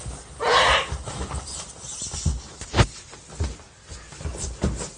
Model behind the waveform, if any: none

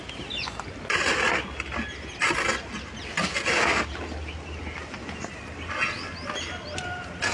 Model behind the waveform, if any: none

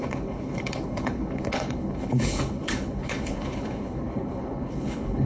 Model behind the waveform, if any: codec, HILCodec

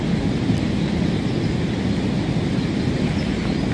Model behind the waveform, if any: none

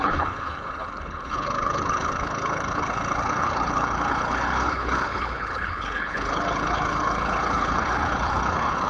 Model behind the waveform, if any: codec, HILCodec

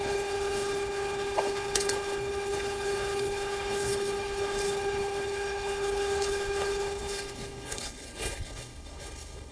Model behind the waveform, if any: codec, HILCodec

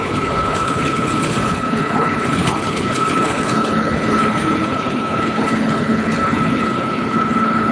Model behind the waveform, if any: codec, HILCodec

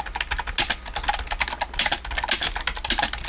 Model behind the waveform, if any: none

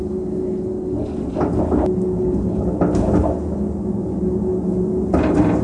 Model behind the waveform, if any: none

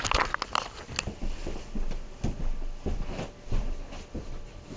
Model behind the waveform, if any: none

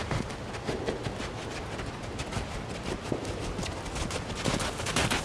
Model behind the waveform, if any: none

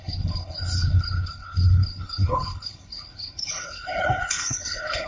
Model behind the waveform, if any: codec, HILCodec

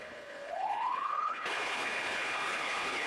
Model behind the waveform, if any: codec, HILCodec